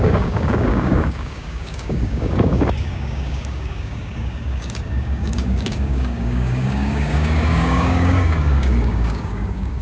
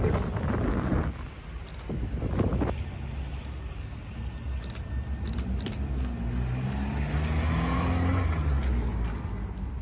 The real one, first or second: second